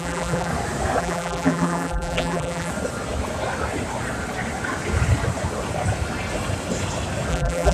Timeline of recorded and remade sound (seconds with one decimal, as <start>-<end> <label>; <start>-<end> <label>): 0.0-0.5 remade; 0.5-1.0 recorded; 1.0-2.7 remade; 2.7-7.3 recorded; 7.3-7.7 remade